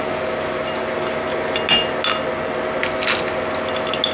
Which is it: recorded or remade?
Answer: recorded